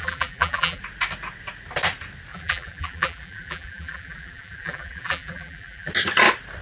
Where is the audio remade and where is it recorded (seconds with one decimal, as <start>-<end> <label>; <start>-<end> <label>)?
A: 0.0-0.8 remade; 0.8-2.3 recorded; 2.3-5.9 remade; 5.9-6.6 recorded